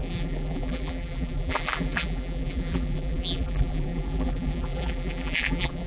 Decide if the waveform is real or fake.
fake